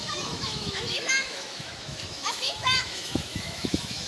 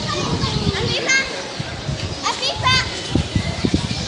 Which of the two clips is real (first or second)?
second